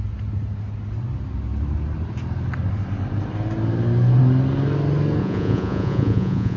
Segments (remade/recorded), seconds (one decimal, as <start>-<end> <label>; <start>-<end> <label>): 0.0-5.2 recorded; 5.2-6.6 remade